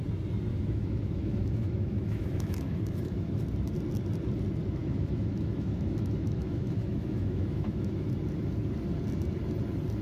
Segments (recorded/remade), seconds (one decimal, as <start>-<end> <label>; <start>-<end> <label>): 0.0-0.5 recorded; 0.5-3.4 remade; 3.4-4.8 recorded; 4.8-8.1 remade; 8.1-10.0 recorded